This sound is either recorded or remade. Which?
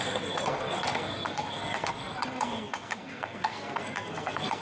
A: remade